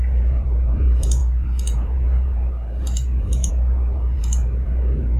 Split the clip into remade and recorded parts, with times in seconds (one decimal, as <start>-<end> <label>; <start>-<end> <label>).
0.0-5.2 remade